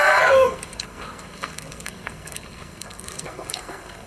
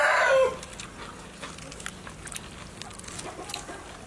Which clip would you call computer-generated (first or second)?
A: first